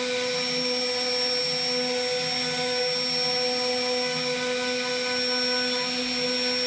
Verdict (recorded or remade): recorded